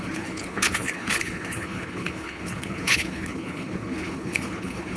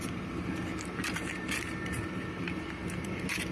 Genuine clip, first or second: second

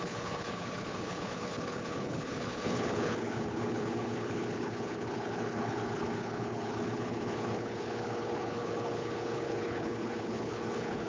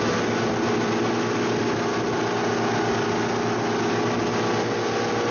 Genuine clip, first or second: second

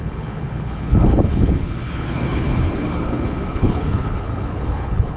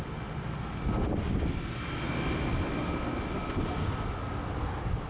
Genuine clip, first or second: second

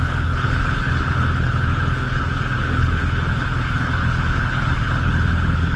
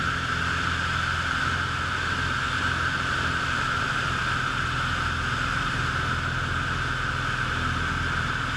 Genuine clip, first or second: second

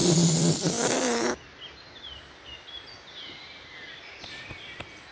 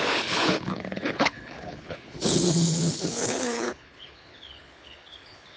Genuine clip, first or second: first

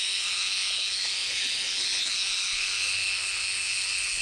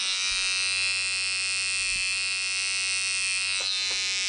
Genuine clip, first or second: second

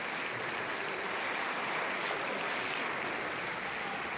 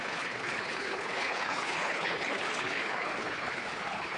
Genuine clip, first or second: first